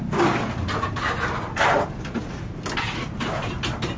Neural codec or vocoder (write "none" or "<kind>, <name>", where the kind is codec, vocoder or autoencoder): none